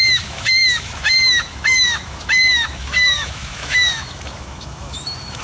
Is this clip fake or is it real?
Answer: fake